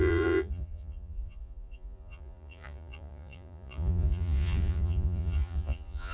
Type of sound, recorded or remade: remade